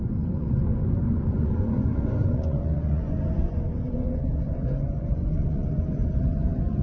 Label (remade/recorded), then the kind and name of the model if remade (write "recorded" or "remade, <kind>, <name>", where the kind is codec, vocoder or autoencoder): remade, vocoder, Vocos